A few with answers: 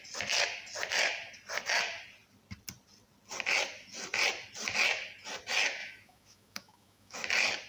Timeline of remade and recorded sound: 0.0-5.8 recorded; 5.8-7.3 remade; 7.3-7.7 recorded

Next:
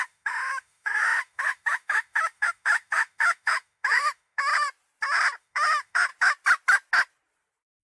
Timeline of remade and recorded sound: 0.0-4.5 remade; 4.5-5.4 recorded; 5.4-6.1 remade; 6.1-7.8 recorded

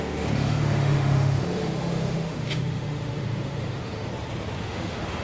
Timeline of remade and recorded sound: 0.0-4.1 remade; 4.1-4.6 recorded; 4.6-5.2 remade

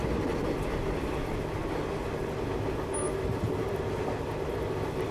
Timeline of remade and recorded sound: 0.0-5.1 recorded

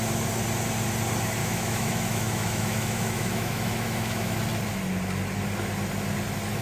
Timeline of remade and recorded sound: 0.0-1.4 recorded; 1.4-4.4 remade; 4.4-6.6 recorded

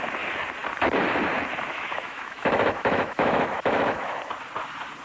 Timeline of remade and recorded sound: 0.0-1.7 recorded; 1.7-4.2 remade; 4.2-5.0 recorded